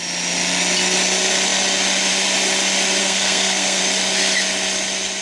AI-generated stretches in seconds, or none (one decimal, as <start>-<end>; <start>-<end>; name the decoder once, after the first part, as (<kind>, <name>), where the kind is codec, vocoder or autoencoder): 3.0-3.8 (codec, SNAC)